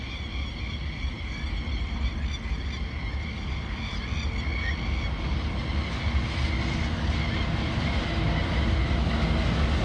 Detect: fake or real real